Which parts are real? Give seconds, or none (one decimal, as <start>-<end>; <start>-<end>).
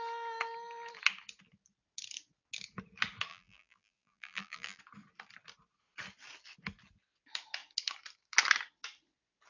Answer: 0.0-3.3; 4.8-9.5